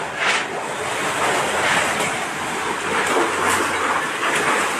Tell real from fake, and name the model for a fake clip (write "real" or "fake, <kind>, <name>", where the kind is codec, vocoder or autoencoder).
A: real